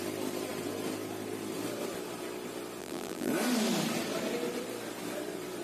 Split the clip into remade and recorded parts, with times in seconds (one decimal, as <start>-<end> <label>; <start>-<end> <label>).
0.0-2.8 recorded; 2.8-3.3 remade; 3.3-5.6 recorded